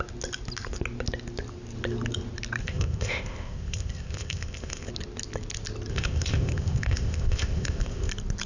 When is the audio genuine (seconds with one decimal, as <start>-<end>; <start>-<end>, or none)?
0.0-2.6; 4.9-5.9; 8.1-8.5